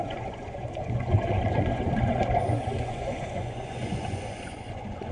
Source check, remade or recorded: remade